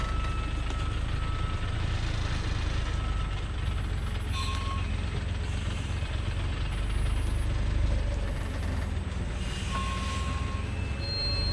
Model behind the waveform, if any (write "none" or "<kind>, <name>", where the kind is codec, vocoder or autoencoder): none